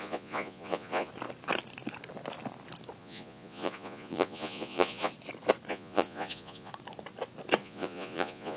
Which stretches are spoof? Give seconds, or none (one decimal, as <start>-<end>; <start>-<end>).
0.0-1.1; 3.0-5.1; 5.7-6.7; 7.6-8.6